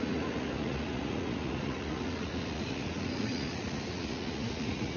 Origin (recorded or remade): remade